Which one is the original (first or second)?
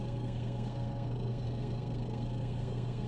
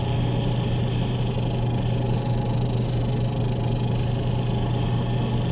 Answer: second